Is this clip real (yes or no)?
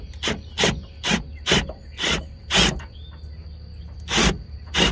yes